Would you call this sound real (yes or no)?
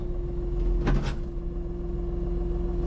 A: yes